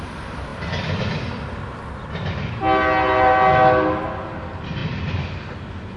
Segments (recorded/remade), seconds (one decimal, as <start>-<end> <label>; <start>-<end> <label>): 0.0-6.0 recorded